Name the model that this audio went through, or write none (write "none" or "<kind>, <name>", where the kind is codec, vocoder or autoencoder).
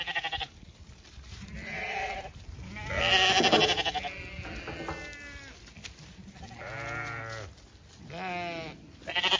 none